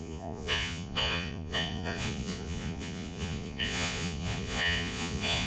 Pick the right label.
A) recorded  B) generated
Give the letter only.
B